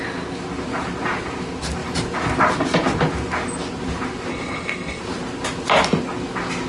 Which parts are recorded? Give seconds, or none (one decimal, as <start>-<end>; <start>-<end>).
0.0-4.3; 5.0-6.7